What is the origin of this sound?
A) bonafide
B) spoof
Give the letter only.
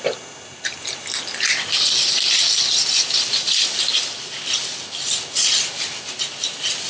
A